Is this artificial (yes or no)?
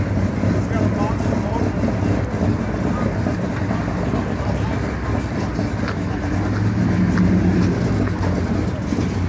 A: no